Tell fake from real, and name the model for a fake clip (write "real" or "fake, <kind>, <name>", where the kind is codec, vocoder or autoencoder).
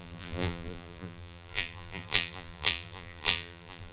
fake, vocoder, BigVGAN v2